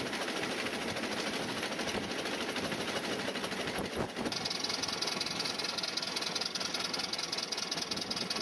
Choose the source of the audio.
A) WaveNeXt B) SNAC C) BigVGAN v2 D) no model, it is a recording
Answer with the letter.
D